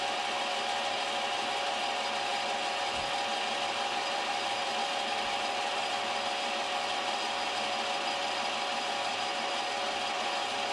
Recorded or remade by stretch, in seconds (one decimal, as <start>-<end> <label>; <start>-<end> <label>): 0.0-10.7 recorded